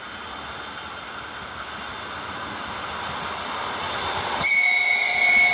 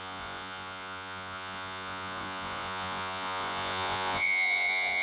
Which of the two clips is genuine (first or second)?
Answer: first